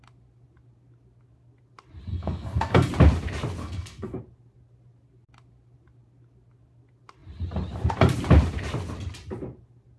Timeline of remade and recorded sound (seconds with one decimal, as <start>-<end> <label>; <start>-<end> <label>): 0.0-2.1 recorded; 2.1-2.9 remade; 2.9-3.6 recorded; 3.6-4.2 remade; 4.2-10.0 recorded